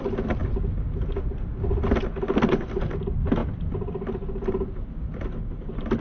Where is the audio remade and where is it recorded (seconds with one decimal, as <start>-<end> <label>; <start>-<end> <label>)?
0.0-6.0 recorded